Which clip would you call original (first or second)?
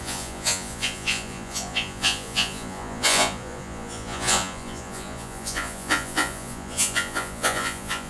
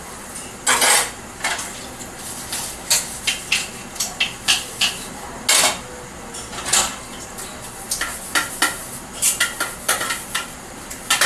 second